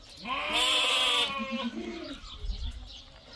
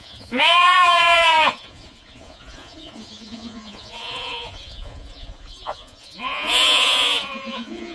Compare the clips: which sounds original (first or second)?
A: first